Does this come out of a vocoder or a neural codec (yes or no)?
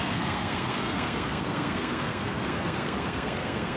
yes